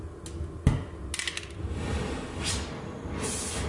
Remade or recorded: recorded